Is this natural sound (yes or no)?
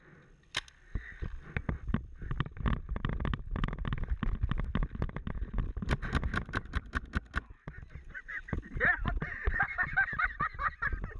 yes